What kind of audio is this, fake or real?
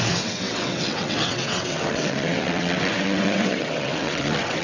fake